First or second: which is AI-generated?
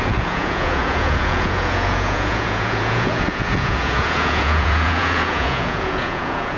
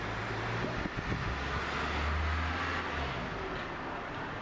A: first